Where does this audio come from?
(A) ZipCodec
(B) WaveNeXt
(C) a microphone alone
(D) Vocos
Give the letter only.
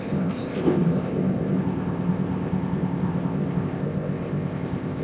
A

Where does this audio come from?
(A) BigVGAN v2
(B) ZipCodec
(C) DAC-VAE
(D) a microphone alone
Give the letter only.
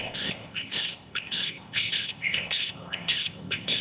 B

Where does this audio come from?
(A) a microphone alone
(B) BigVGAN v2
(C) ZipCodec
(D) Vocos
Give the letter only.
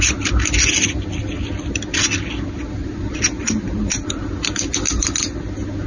A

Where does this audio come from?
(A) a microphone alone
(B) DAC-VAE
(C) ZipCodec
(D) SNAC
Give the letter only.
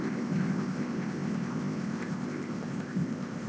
C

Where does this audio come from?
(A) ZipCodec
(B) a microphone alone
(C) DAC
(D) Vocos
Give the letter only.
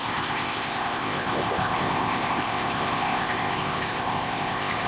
A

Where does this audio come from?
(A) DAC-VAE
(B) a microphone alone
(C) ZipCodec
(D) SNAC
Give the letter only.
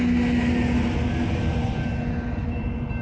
B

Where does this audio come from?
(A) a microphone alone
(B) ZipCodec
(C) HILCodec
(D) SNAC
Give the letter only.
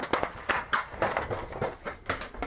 A